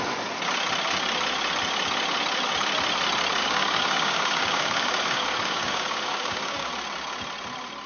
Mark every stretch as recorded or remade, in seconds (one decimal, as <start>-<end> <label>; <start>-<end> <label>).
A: 0.0-3.4 recorded; 3.4-6.7 remade; 6.7-7.9 recorded

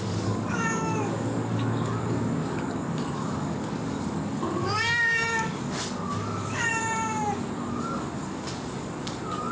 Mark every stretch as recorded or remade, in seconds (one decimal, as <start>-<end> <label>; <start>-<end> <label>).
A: 0.0-6.8 remade; 6.8-7.7 recorded; 7.7-9.5 remade